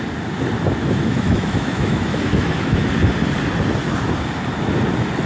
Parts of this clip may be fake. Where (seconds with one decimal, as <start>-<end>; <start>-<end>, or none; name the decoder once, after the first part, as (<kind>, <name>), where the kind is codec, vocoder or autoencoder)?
0.8-2.9 (autoencoder, DAC-VAE)

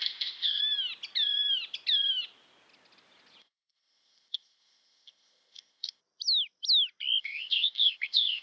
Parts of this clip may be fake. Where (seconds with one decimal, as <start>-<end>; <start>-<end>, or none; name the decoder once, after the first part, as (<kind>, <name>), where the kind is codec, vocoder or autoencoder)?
0.0-0.6 (codec, ZipCodec); 3.4-6.0; 7.2-8.4